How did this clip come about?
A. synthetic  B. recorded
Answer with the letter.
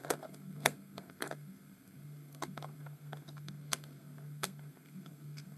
A